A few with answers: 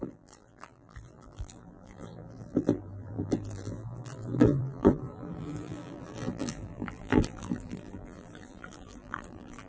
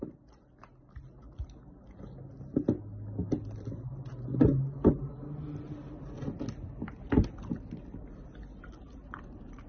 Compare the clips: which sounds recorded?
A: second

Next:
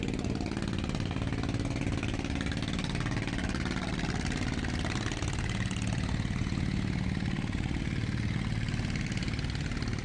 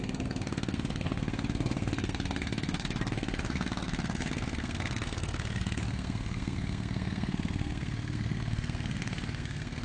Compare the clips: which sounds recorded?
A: first